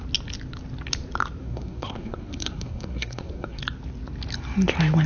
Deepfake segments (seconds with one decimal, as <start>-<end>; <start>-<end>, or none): 1.4-3.6